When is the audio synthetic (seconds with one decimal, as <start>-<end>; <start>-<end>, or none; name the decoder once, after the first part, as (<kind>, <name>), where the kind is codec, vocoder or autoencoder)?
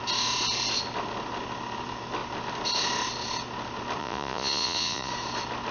4.0-5.1 (vocoder, Vocos)